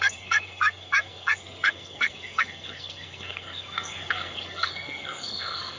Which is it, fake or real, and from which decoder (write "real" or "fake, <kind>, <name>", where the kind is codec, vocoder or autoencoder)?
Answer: fake, codec, SNAC